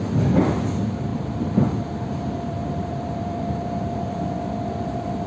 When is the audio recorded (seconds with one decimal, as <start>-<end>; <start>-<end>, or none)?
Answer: 0.0-1.1; 4.2-5.3